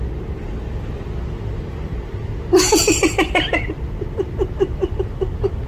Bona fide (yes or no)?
yes